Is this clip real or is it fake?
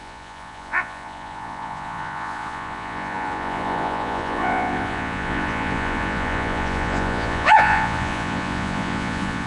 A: fake